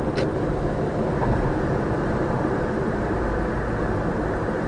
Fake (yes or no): yes